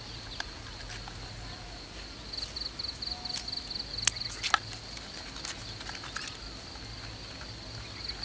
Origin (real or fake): real